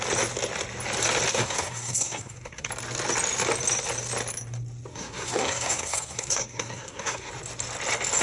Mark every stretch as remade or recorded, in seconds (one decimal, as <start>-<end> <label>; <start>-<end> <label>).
0.0-1.3 recorded; 1.3-2.7 remade; 2.7-4.9 recorded; 4.9-7.3 remade; 7.3-8.2 recorded